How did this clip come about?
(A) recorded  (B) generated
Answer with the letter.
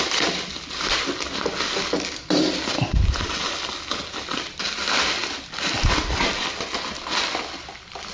A